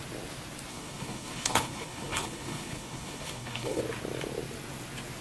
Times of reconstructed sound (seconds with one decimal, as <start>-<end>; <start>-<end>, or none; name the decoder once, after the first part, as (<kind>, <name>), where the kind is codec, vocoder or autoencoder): 0.7-3.8 (codec, HILCodec)